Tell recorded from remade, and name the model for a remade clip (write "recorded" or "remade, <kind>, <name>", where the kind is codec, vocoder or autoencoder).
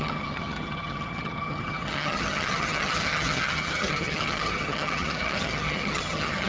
remade, vocoder, HiFi-GAN